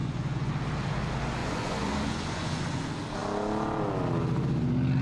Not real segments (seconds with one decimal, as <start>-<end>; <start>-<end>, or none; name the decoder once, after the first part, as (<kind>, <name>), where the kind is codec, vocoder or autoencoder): 0.0-0.5 (vocoder, Vocos); 1.4-2.8